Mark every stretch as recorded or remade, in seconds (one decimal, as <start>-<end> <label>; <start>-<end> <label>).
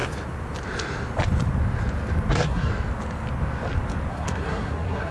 0.0-2.3 recorded; 2.3-2.7 remade; 2.7-4.1 recorded; 4.1-5.1 remade